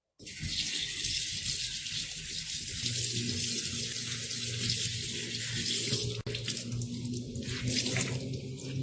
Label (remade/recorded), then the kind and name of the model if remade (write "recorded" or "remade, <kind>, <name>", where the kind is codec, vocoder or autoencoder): recorded